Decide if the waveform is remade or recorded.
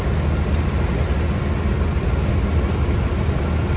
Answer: recorded